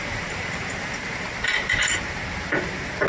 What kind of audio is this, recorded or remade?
remade